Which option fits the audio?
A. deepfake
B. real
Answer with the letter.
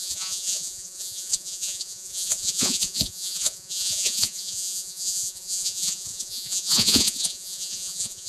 A